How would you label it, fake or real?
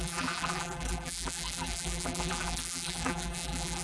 fake